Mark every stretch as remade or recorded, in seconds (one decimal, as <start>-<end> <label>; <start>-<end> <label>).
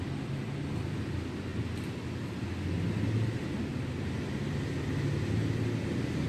0.0-3.7 recorded; 3.7-5.8 remade; 5.8-6.3 recorded